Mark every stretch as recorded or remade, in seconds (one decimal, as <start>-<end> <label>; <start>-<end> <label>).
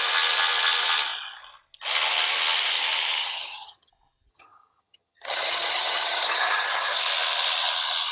0.0-3.2 recorded; 3.2-3.9 remade; 3.9-4.3 recorded; 4.3-7.0 remade; 7.0-8.1 recorded